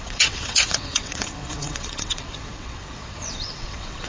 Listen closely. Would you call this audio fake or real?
fake